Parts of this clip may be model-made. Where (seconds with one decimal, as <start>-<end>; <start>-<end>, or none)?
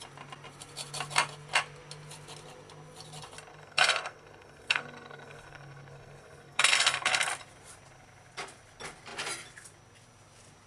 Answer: 3.5-7.3